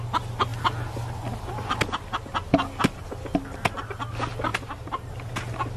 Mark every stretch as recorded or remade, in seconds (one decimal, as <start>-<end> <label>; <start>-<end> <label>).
0.0-4.5 recorded; 4.5-5.1 remade; 5.1-5.8 recorded